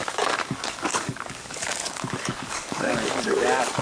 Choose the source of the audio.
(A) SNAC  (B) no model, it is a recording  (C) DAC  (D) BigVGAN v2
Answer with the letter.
C